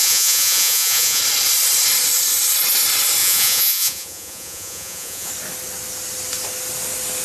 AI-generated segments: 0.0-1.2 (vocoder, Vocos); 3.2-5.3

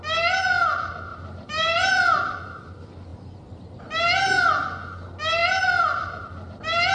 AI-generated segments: 1.1-1.9 (vocoder, BigVGAN v2); 5.4-6.2

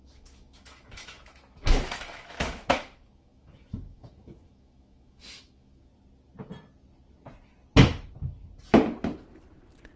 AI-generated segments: 0.0-5.9 (autoencoder, DAC-VAE)